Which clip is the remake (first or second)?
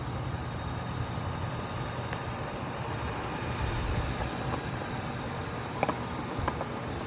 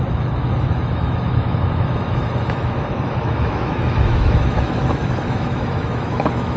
second